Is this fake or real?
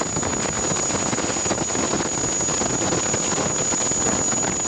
real